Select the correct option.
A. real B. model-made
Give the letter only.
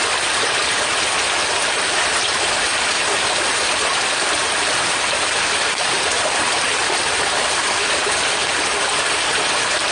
B